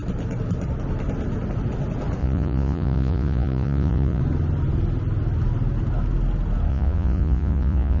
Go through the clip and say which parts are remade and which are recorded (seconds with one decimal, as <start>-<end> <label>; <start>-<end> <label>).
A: 0.0-2.2 recorded; 2.2-4.2 remade; 4.2-6.7 recorded; 6.7-8.0 remade